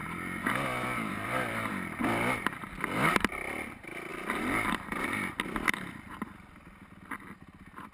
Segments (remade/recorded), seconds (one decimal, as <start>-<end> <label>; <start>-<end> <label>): 0.0-1.1 recorded; 1.1-7.9 remade